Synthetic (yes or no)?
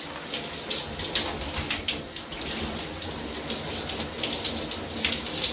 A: no